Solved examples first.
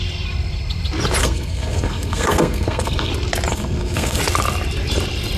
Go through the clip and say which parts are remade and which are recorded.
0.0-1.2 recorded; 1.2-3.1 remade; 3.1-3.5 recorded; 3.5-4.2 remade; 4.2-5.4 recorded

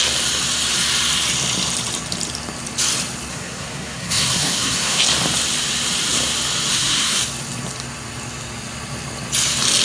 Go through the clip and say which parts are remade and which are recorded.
0.0-3.3 recorded; 3.3-5.0 remade; 5.0-6.7 recorded; 6.7-7.2 remade; 7.2-9.8 recorded

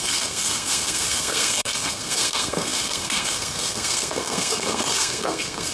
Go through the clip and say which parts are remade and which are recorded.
0.0-5.7 remade

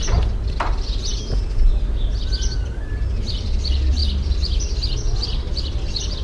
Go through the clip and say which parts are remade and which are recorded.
0.0-6.2 recorded